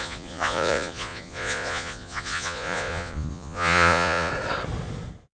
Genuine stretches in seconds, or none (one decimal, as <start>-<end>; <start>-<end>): 4.3-5.3